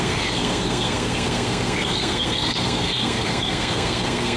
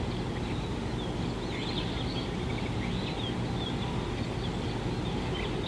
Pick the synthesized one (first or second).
first